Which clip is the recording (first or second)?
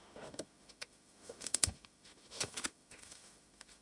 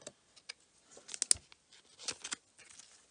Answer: second